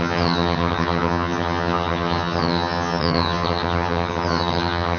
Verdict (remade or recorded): remade